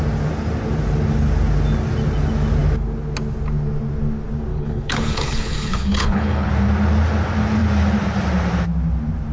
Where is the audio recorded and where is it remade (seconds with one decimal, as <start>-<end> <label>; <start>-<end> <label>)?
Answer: 0.0-4.5 recorded; 4.5-6.5 remade; 6.5-9.3 recorded